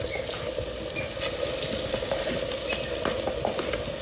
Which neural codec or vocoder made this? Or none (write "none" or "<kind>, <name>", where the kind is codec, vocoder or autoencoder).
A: none